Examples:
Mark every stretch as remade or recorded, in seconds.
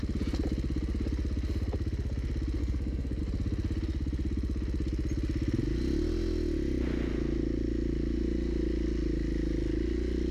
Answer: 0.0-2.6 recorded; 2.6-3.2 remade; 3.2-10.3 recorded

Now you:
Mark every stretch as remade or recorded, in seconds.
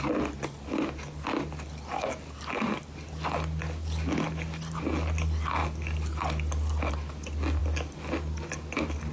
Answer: 0.0-9.1 recorded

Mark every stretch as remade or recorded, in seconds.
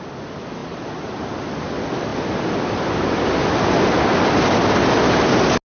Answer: 0.0-5.7 recorded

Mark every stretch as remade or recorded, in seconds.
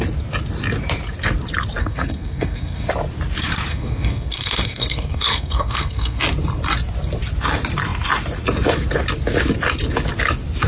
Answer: 0.0-1.8 recorded; 1.8-2.9 remade; 2.9-3.7 recorded; 3.7-6.2 remade; 6.2-10.7 recorded